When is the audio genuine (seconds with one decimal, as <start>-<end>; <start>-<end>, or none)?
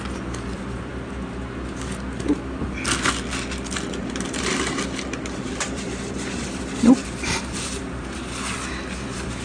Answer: 0.9-4.0